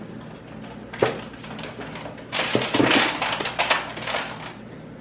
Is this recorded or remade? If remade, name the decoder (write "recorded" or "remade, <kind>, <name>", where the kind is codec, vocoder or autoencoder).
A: recorded